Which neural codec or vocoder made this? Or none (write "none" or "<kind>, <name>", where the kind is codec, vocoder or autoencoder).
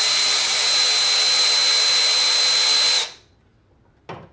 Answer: none